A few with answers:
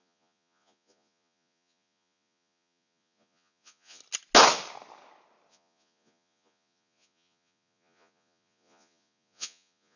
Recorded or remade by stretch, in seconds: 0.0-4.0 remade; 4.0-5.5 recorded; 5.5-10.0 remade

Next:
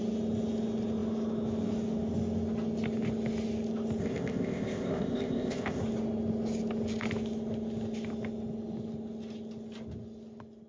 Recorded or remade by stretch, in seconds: 0.0-4.0 recorded; 4.0-5.8 remade; 5.8-10.7 recorded

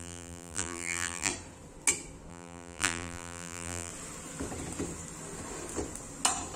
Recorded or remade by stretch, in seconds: 0.0-1.3 remade; 1.3-2.3 recorded; 2.3-3.9 remade; 3.9-6.6 recorded

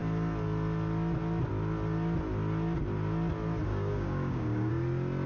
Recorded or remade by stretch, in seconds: 0.0-3.7 recorded; 3.7-4.7 remade; 4.7-5.3 recorded

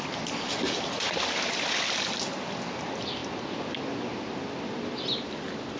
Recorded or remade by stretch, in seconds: 0.0-5.8 recorded

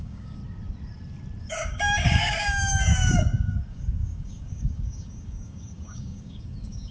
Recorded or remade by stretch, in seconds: 0.0-0.4 remade; 0.4-1.4 recorded; 1.4-6.9 remade